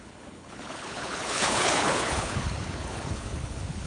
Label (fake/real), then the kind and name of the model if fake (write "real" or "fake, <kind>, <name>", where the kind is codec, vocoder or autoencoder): fake, codec, HILCodec